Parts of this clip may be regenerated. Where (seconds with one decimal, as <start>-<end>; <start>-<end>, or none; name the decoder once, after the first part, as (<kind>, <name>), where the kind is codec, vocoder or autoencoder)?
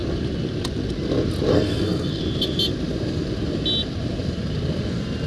1.5-2.2 (codec, SNAC)